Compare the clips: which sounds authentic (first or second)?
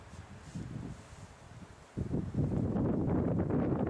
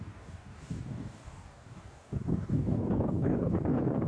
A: first